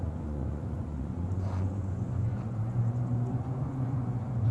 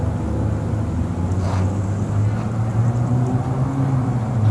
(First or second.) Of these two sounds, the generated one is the first